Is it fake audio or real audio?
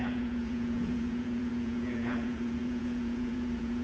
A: fake